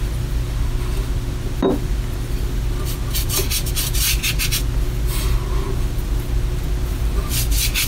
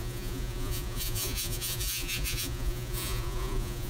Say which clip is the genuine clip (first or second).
first